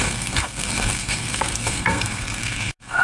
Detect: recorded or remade remade